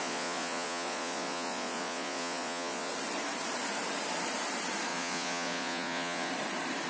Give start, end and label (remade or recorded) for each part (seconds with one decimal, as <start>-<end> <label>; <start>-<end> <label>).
0.0-2.9 remade; 2.9-4.9 recorded; 4.9-6.3 remade; 6.3-6.9 recorded